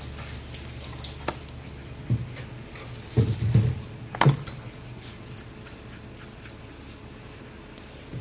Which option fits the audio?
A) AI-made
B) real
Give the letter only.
B